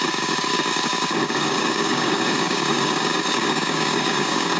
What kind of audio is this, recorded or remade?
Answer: remade